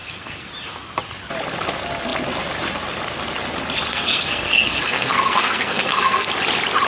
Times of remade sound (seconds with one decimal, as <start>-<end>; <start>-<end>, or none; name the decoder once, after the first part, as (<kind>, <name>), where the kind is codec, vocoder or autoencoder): 0.0-0.5 (codec, SNAC); 3.9-6.3